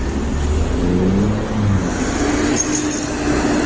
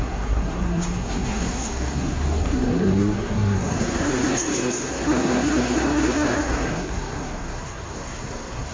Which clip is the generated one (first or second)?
second